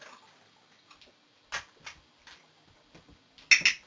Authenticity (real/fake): real